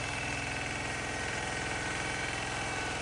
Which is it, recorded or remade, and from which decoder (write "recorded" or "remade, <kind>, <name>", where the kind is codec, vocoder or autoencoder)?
remade, vocoder, BigVGAN v2